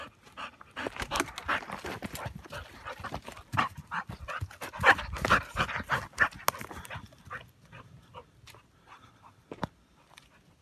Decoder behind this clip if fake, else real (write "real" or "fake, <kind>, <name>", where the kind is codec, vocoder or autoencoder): real